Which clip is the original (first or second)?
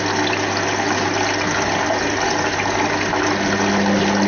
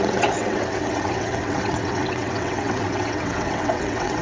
first